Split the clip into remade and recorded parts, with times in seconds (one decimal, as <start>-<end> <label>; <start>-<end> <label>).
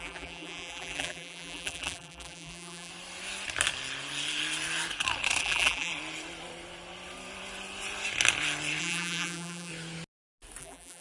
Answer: 0.0-2.9 remade; 2.9-5.4 recorded; 5.4-5.9 remade; 5.9-8.8 recorded; 8.8-9.7 remade; 9.7-10.6 recorded; 10.6-11.0 remade